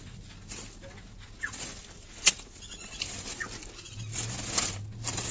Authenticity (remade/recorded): recorded